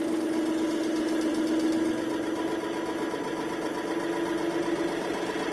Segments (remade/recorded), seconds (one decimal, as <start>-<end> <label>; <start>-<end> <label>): 0.0-1.3 remade; 1.3-4.6 recorded; 4.6-5.5 remade